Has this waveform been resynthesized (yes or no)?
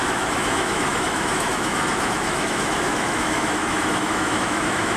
yes